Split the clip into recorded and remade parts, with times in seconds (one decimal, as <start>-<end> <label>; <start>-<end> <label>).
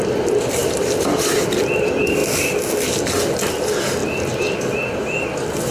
0.0-0.6 recorded; 0.6-1.5 remade; 1.5-5.7 recorded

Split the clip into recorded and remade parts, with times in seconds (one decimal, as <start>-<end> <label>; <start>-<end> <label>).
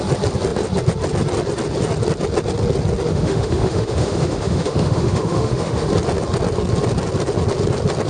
0.0-3.1 recorded; 3.1-5.9 remade; 5.9-8.1 recorded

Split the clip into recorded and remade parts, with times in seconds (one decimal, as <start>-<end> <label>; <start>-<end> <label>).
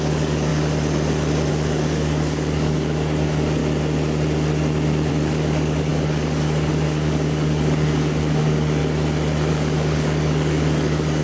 0.0-0.5 remade; 0.5-1.5 recorded; 1.5-3.6 remade; 3.6-5.1 recorded; 5.1-8.8 remade; 8.8-9.5 recorded; 9.5-11.2 remade